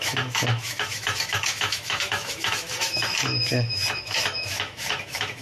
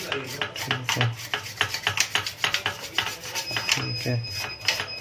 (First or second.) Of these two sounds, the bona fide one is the second